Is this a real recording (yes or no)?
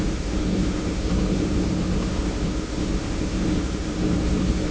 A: no